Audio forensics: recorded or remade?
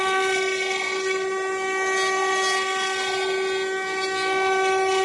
recorded